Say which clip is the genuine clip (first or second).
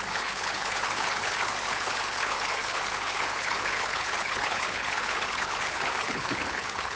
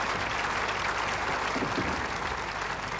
second